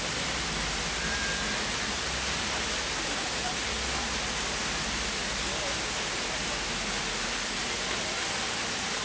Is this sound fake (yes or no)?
no